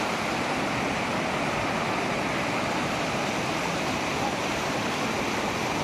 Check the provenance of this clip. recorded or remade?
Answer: recorded